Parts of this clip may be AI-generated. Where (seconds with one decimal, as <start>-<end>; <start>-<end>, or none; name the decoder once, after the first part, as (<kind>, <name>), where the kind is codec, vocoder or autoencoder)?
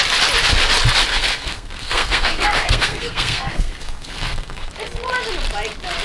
1.1-4.7 (codec, SNAC)